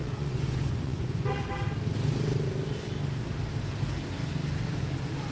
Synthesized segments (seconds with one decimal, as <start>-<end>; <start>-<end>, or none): 0.0-1.5